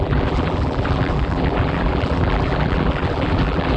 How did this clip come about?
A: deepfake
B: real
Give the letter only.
A